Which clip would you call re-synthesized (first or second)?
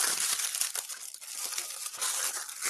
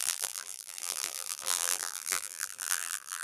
second